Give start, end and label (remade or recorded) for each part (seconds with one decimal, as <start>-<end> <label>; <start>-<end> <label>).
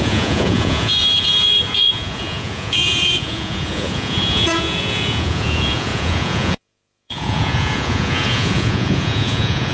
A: 0.0-9.7 remade